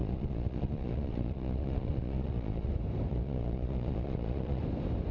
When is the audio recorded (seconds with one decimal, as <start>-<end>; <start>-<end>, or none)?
2.7-3.1; 4.6-5.1

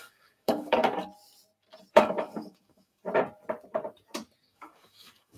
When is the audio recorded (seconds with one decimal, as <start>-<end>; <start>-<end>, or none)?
0.8-1.9; 3.0-4.4

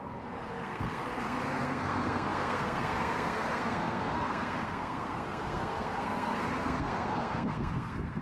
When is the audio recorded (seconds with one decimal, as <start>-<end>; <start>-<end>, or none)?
none

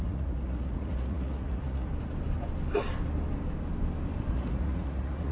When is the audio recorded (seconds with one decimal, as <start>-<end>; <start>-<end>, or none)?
1.9-4.3

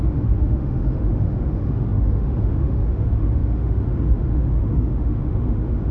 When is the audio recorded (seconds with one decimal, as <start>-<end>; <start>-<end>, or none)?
none